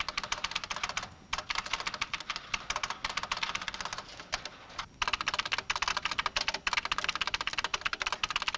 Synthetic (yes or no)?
no